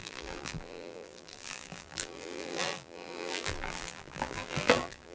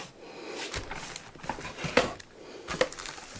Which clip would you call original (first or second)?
second